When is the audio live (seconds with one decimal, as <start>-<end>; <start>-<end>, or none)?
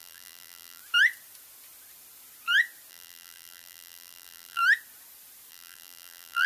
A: 0.8-2.9; 4.6-5.5